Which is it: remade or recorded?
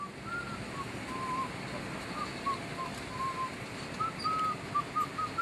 recorded